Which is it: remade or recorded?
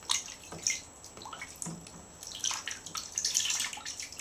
recorded